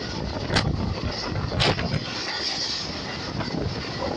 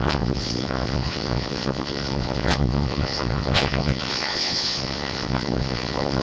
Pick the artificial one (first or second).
second